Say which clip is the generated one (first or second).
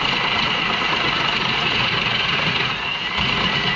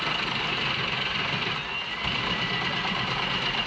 first